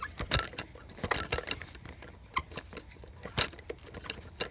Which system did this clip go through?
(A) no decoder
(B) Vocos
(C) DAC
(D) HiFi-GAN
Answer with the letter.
A